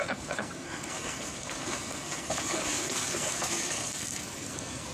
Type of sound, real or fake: fake